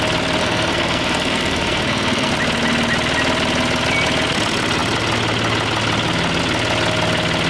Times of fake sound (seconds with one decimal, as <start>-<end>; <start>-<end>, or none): 0.4-2.3